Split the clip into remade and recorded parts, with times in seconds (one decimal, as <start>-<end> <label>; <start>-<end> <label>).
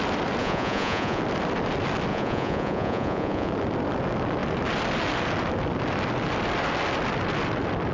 0.0-0.4 recorded; 0.4-1.2 remade; 1.2-2.1 recorded; 2.1-3.5 remade; 3.5-7.9 recorded